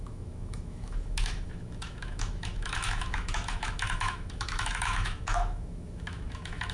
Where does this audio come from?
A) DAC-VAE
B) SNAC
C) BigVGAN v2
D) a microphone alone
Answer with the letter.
A